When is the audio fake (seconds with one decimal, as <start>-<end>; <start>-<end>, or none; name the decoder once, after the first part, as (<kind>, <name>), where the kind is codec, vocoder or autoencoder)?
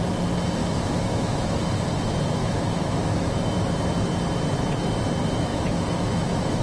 0.6-1.7 (autoencoder, DAC-VAE); 2.4-3.7; 5.5-6.6